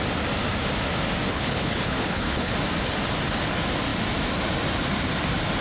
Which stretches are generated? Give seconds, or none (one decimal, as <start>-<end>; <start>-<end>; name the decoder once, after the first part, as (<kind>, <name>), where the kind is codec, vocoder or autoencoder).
1.3-2.5 (codec, HILCodec)